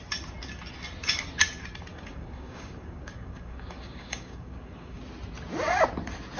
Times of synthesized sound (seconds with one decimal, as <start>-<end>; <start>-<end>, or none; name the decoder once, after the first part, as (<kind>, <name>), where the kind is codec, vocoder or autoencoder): 1.9-5.0 (codec, DAC)